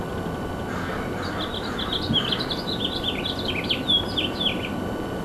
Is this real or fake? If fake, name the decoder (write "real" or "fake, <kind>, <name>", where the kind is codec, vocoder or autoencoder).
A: real